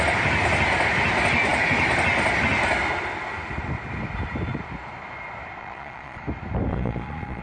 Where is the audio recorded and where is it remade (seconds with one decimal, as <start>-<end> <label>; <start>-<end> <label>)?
0.0-5.6 recorded; 5.6-6.2 remade; 6.2-6.7 recorded; 6.7-7.4 remade